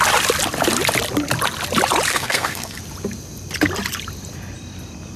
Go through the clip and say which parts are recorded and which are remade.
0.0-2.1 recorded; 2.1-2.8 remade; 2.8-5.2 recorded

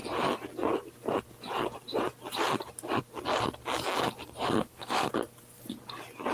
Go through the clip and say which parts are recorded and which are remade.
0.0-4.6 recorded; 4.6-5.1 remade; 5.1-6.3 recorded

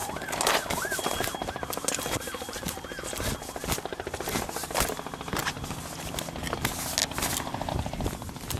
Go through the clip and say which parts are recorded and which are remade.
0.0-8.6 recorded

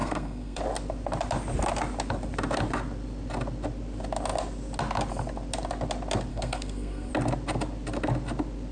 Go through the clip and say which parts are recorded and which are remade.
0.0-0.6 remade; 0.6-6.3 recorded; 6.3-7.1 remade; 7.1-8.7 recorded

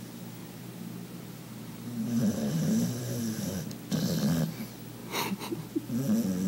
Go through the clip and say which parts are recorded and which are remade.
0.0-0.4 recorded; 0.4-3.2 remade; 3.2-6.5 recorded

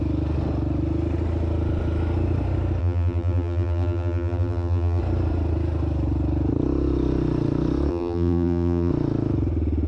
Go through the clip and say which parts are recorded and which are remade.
0.0-2.8 recorded; 2.8-5.0 remade; 5.0-7.9 recorded; 7.9-8.9 remade; 8.9-9.9 recorded

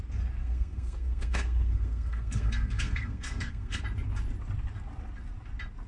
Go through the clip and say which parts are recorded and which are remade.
0.0-0.4 recorded; 0.4-3.8 remade; 3.8-5.9 recorded

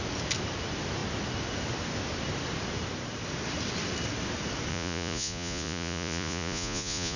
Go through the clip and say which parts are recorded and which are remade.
0.0-4.7 recorded; 4.7-7.2 remade